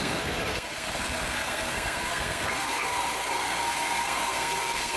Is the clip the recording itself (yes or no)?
no